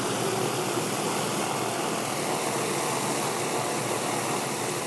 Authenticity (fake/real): real